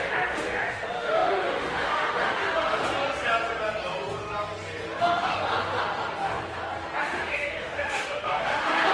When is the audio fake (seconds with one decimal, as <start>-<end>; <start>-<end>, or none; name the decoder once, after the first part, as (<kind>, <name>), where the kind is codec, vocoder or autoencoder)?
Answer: 0.0-2.8 (autoencoder, DAC-VAE); 5.0-5.5; 7.0-8.9

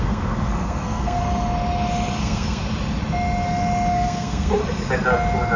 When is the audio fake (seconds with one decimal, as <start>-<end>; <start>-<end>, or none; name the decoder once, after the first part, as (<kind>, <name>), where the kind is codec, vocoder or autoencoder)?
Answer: 0.0-1.2 (codec, SNAC); 2.2-2.6; 3.9-4.6

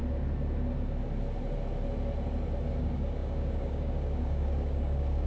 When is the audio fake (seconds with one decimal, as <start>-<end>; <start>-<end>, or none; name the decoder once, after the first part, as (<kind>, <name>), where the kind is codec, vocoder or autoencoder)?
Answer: 2.8-5.3 (codec, DAC)

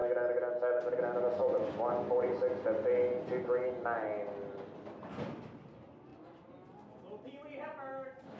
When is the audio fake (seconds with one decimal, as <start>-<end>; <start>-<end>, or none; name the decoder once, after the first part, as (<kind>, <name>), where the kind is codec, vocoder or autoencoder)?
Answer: none

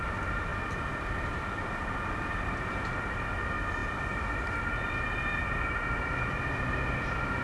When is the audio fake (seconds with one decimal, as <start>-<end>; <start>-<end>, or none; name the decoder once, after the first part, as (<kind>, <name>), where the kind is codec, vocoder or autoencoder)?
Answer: none